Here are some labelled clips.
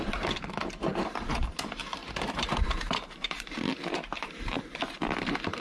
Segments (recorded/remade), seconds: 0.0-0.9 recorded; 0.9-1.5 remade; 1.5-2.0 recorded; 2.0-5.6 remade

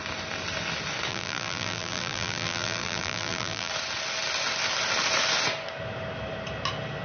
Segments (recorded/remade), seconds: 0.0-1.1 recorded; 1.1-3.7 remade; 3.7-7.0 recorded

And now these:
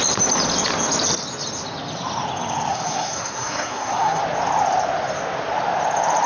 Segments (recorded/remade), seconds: 0.0-2.7 recorded; 2.7-4.2 remade; 4.2-6.3 recorded

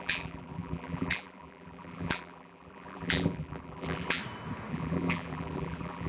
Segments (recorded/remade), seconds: 0.0-4.2 remade; 4.2-4.7 recorded; 4.7-6.1 remade